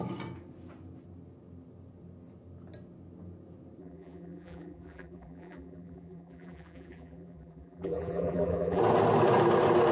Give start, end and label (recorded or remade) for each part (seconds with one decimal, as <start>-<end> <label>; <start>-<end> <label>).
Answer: 0.0-3.8 recorded; 3.8-8.8 remade; 8.8-9.9 recorded